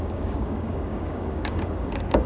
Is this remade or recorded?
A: remade